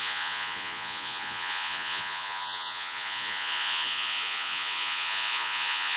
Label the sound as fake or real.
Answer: fake